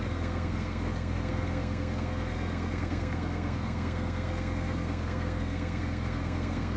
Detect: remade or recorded remade